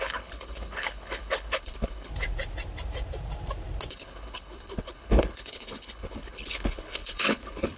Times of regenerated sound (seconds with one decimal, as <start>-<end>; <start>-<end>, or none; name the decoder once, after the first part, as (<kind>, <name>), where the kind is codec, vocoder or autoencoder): 0.0-2.1 (codec, HILCodec); 3.9-7.8